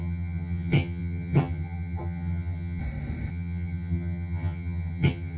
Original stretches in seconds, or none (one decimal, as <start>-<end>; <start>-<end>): 2.8-3.3